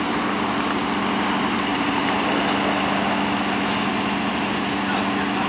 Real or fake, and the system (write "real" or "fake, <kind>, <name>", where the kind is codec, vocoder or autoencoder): real